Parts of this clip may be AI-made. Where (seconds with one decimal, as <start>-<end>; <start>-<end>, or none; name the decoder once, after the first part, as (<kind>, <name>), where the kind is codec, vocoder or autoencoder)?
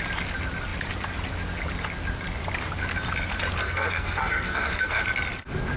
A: 3.6-5.0 (codec, SNAC)